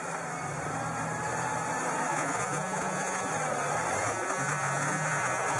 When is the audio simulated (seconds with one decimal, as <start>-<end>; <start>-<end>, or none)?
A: 2.1-3.3; 4.0-5.6

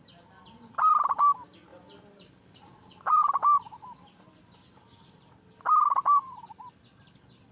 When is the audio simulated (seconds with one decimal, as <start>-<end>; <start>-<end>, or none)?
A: none

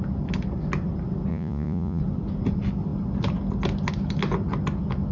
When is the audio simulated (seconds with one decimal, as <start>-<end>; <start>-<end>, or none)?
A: 1.3-2.0

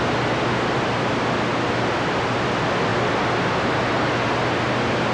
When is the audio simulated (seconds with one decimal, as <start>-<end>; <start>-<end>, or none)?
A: none

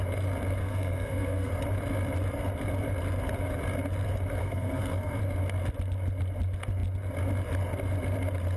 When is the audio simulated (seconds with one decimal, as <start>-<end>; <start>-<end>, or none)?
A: 0.6-1.5; 4.4-5.2